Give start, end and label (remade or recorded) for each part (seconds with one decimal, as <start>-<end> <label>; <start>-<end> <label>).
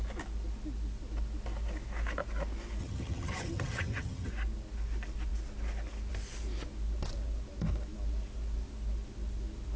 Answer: 0.0-2.8 recorded; 2.8-4.3 remade; 4.3-9.8 recorded